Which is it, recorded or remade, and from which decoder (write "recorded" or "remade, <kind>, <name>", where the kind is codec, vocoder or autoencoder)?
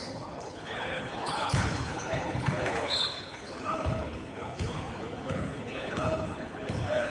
remade, codec, HILCodec